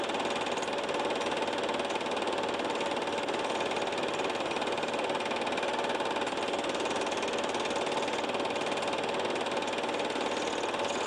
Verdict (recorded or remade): recorded